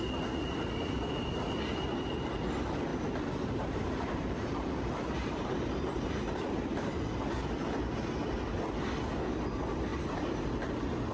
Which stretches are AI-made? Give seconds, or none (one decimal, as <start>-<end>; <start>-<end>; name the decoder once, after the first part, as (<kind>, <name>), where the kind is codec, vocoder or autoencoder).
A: 2.9-7.0 (vocoder, BigVGAN v2); 9.9-10.7